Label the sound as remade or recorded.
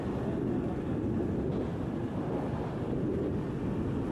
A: recorded